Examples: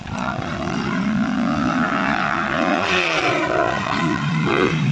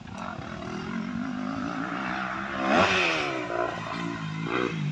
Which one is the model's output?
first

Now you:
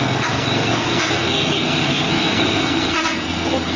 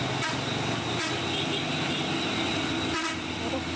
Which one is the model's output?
first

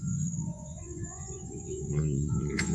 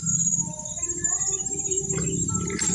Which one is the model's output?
first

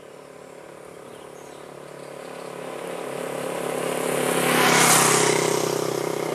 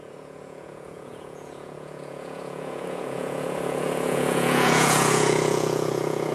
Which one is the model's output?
second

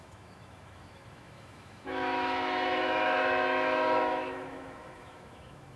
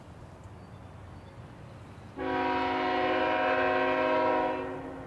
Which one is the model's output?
first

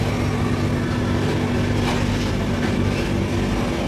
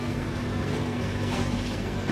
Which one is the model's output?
second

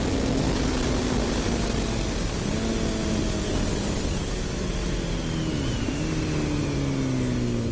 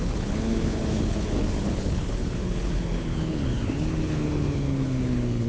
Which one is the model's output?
second